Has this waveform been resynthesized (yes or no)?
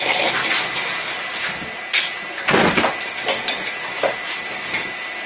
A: no